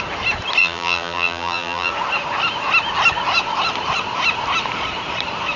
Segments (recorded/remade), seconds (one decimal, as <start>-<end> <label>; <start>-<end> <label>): 0.0-0.6 recorded; 0.6-1.9 remade; 1.9-5.6 recorded